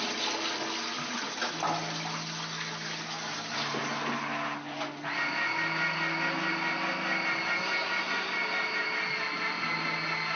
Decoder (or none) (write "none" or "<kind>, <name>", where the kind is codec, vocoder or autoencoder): none